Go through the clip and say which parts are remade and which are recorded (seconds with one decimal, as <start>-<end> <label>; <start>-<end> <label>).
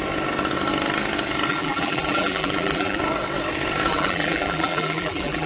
0.0-1.5 recorded; 1.5-3.0 remade; 3.0-3.9 recorded; 3.9-5.5 remade